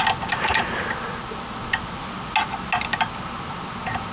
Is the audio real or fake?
real